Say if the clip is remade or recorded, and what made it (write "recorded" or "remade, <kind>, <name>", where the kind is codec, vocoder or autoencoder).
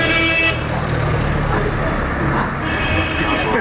recorded